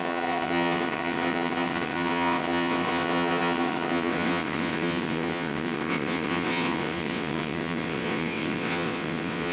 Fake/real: fake